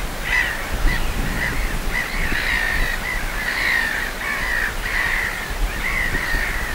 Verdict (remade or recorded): remade